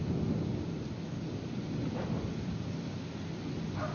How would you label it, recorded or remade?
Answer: recorded